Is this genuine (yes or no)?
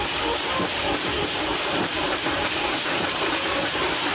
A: no